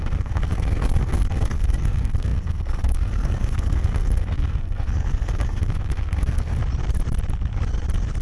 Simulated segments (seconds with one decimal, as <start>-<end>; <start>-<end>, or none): 0.0-6.6